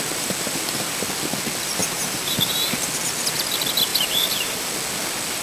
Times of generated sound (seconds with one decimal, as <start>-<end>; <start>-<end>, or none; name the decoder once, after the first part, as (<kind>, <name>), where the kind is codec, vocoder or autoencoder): 1.8-2.9 (vocoder, BigVGAN v2); 3.9-4.7